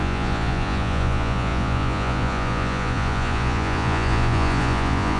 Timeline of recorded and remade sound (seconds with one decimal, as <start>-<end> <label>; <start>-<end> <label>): 0.0-5.2 remade